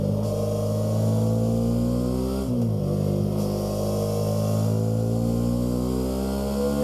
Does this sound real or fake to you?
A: real